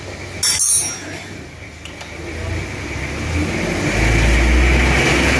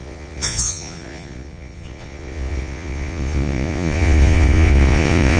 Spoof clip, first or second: second